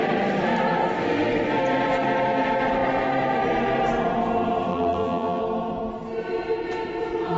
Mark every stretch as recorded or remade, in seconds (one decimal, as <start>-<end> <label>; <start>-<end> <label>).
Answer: 0.0-4.7 recorded; 4.7-5.4 remade; 5.4-7.4 recorded